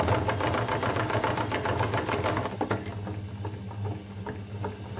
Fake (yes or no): no